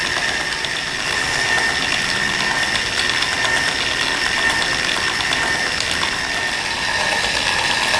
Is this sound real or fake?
real